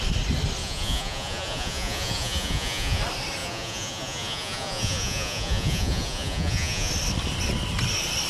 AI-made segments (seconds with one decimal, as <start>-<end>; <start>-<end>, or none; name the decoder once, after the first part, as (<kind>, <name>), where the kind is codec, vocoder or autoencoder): 0.6-3.0 (vocoder, Vocos); 3.4-6.9